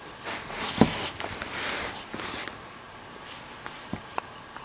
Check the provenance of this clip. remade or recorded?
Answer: recorded